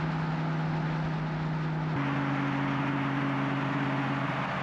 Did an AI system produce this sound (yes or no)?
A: no